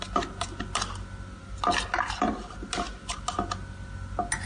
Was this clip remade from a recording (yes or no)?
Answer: no